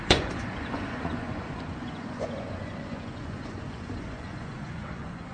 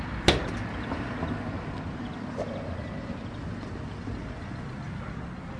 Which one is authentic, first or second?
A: second